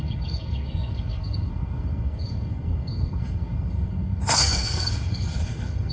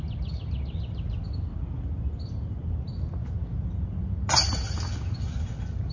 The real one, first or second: second